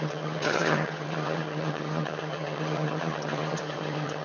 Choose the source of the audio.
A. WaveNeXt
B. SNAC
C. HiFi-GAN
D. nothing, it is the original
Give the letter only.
C